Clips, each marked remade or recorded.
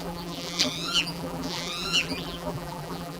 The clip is remade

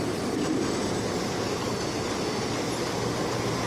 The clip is recorded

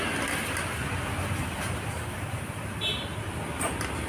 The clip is recorded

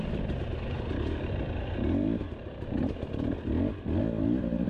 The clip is recorded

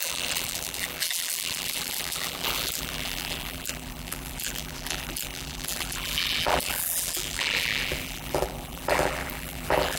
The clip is remade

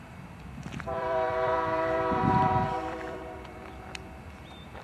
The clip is remade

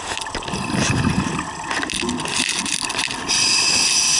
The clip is recorded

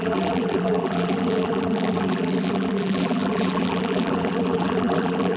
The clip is remade